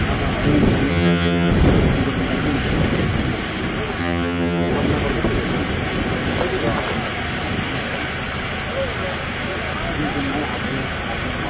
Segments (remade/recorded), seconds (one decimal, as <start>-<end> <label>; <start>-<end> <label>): 0.0-0.9 recorded; 0.9-1.5 remade; 1.5-4.0 recorded; 4.0-4.7 remade; 4.7-11.5 recorded